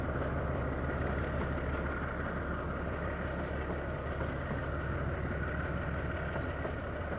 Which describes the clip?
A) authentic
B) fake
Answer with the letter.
A